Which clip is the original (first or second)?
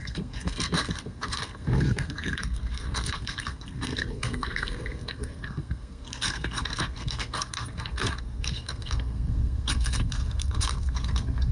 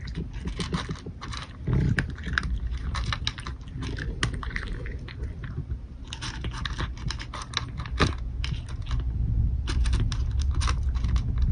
second